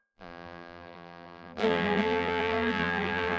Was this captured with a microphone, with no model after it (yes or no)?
no